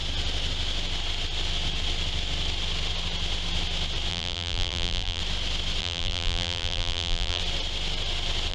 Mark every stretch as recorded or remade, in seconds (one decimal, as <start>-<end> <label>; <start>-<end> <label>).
0.0-4.1 recorded; 4.1-5.2 remade; 5.2-5.8 recorded; 5.8-7.4 remade; 7.4-8.5 recorded